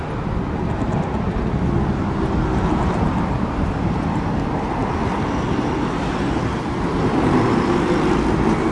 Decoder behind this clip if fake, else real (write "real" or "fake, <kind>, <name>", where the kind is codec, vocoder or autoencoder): real